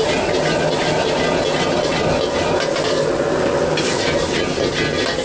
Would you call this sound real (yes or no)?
yes